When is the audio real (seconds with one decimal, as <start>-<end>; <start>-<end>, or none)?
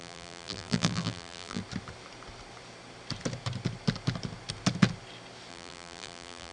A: 1.6-5.5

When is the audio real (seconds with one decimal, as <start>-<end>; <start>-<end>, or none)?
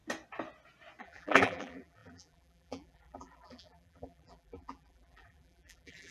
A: 0.0-1.0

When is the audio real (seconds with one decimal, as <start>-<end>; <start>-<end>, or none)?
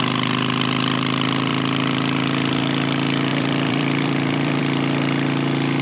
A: 0.0-3.3; 4.6-5.8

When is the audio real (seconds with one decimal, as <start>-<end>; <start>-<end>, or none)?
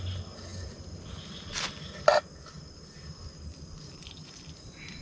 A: none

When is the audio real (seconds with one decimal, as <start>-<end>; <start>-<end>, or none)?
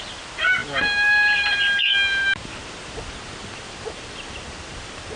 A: 0.0-5.2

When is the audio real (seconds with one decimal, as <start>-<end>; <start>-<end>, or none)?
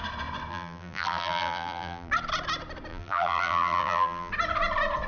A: 0.0-0.5; 2.1-2.9; 4.3-5.1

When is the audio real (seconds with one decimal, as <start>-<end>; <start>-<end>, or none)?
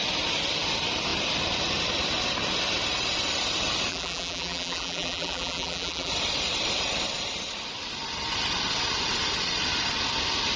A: 0.0-3.9; 6.1-10.6